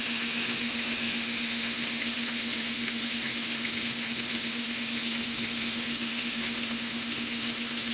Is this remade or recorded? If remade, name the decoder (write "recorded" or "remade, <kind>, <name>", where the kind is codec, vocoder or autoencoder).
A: remade, autoencoder, DAC-VAE